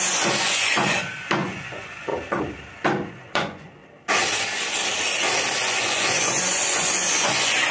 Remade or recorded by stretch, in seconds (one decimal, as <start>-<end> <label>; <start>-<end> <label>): 0.0-2.1 remade; 2.1-3.1 recorded; 3.1-3.8 remade; 3.8-5.6 recorded; 5.6-7.7 remade